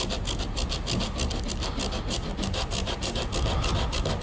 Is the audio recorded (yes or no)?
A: yes